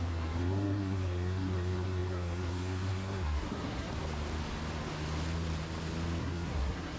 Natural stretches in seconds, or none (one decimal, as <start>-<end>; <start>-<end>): 3.9-6.2

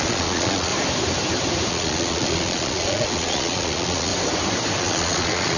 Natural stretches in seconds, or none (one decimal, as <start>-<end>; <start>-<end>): 0.7-1.7; 4.1-4.8

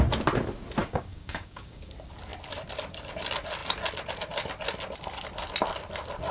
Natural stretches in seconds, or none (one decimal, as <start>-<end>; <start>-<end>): 0.0-0.8; 1.9-6.3

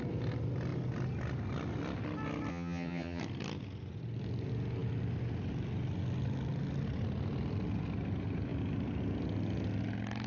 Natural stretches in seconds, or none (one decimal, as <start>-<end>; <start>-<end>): 0.0-2.5; 3.2-10.3

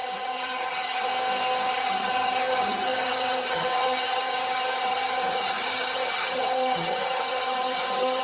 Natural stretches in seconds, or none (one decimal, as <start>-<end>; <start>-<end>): 1.1-1.7

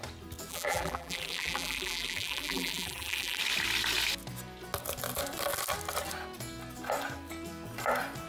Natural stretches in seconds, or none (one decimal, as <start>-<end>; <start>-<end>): 0.0-0.5; 3.4-8.3

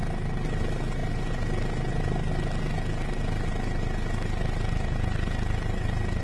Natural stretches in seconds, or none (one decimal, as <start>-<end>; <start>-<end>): 0.0-6.2